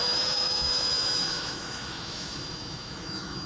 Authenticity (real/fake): fake